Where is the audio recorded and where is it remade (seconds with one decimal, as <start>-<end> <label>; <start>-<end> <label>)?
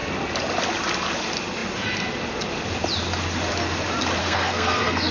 0.0-4.2 recorded; 4.2-5.1 remade